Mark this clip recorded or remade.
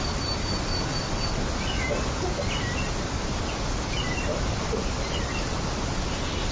recorded